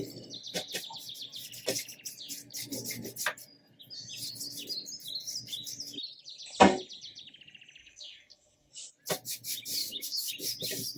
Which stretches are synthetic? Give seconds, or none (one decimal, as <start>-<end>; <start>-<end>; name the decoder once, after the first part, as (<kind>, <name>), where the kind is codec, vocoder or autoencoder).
7.8-8.7 (codec, DAC); 9.8-10.3